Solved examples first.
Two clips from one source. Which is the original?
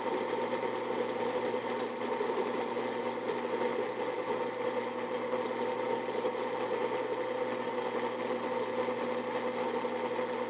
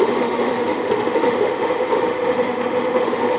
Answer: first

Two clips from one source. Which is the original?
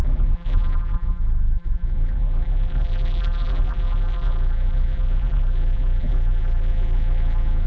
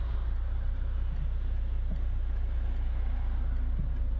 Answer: second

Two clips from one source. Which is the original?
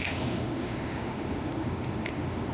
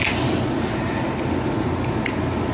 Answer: second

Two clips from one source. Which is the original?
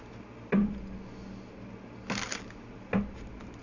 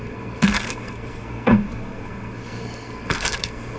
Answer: first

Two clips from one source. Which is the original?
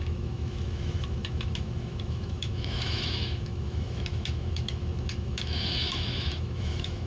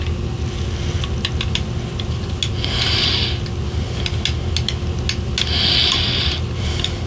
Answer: second